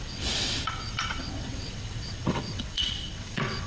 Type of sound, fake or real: fake